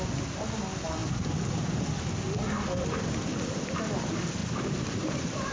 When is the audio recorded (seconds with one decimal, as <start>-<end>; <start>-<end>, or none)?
0.0-4.4